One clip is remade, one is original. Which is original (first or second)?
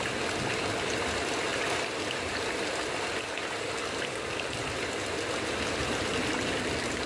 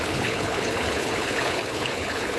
first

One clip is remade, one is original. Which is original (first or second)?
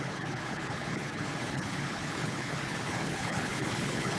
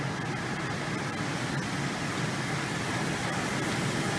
second